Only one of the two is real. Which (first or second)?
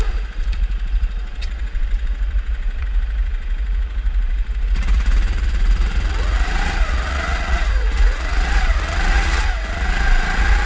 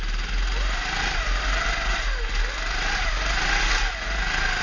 second